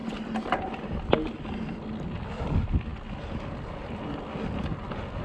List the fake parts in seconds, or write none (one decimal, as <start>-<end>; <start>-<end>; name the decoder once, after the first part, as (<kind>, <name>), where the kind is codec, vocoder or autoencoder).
none